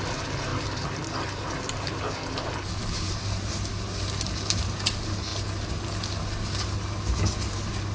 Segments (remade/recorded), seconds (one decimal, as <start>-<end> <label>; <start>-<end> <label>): 0.0-2.8 recorded; 2.8-4.3 remade; 4.3-7.9 recorded

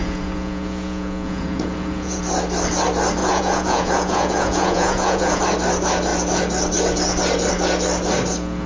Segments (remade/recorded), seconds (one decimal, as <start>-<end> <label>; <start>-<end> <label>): 0.0-2.2 remade; 2.2-3.2 recorded; 3.2-5.4 remade; 5.4-8.7 recorded

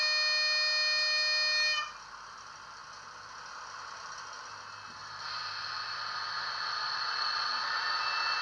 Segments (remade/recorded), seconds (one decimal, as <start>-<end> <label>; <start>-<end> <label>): 0.0-6.8 recorded; 6.8-7.6 remade; 7.6-8.4 recorded

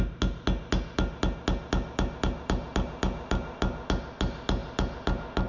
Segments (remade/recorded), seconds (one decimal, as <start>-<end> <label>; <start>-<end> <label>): 0.0-5.5 recorded